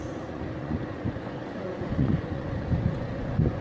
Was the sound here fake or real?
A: fake